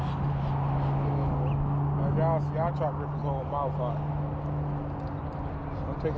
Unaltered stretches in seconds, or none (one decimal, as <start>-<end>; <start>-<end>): 0.0-6.2